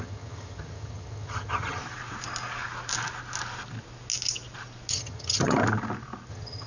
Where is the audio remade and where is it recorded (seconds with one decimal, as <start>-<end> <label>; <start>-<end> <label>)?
0.0-1.8 remade; 1.8-4.9 recorded; 4.9-5.6 remade; 5.6-6.3 recorded; 6.3-6.7 remade

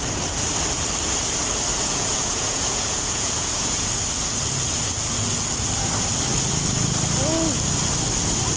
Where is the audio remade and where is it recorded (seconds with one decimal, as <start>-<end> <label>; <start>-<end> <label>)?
0.0-1.7 recorded; 1.7-3.9 remade; 3.9-8.6 recorded

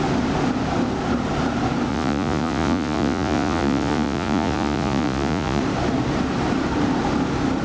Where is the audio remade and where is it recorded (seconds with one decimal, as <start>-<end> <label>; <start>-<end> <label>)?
0.0-1.9 recorded; 1.9-5.6 remade; 5.6-7.6 recorded

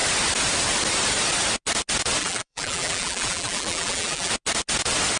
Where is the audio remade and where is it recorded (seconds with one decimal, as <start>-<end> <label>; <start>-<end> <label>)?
0.0-2.2 recorded; 2.2-4.3 remade; 4.3-5.2 recorded

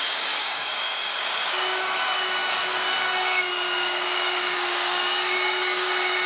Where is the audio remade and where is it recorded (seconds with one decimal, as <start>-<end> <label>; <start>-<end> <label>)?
0.0-6.3 remade

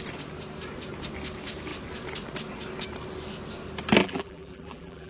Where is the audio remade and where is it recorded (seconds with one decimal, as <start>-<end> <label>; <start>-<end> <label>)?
0.0-4.0 recorded; 4.0-5.1 remade

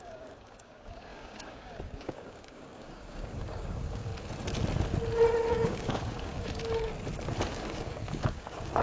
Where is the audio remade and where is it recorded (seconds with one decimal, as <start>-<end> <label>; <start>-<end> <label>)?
0.0-4.1 remade; 4.1-5.5 recorded; 5.5-6.9 remade; 6.9-7.5 recorded; 7.5-8.8 remade

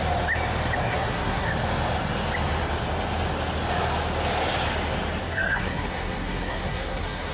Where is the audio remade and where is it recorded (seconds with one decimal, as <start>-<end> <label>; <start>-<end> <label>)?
0.0-0.8 recorded; 0.8-1.5 remade; 1.5-5.2 recorded; 5.2-7.3 remade